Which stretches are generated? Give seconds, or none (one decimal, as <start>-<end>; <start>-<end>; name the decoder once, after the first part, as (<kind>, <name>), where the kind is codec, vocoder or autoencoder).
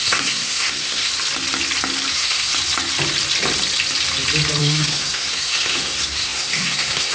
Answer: 0.0-1.1 (codec, SNAC); 2.1-2.5; 4.6-7.1